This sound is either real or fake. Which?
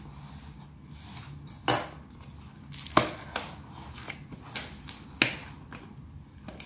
real